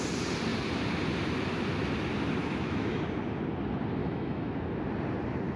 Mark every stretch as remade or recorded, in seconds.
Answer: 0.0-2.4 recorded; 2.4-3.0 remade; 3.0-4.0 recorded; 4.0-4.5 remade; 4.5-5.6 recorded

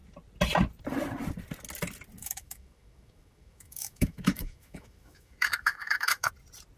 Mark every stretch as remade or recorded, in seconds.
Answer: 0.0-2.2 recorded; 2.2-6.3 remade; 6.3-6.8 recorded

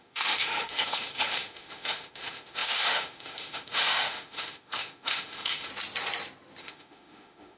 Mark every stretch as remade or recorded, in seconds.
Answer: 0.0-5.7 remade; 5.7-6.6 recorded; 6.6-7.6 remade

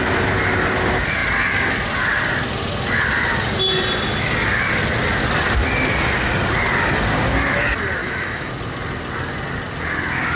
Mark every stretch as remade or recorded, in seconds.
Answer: 0.0-8.0 recorded; 8.0-8.5 remade; 8.5-10.4 recorded